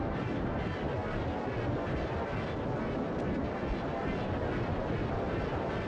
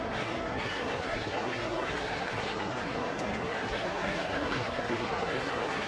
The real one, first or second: first